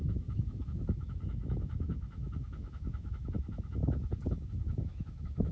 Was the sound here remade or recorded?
remade